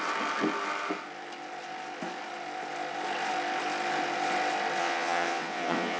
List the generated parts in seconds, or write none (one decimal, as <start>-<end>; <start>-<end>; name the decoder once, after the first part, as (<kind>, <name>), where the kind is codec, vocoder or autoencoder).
4.8-6.0 (vocoder, WaveNeXt)